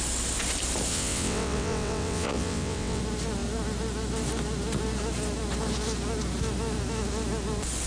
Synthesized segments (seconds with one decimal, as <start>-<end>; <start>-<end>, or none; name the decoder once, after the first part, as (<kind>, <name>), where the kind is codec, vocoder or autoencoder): 0.9-3.0 (vocoder, WaveNeXt)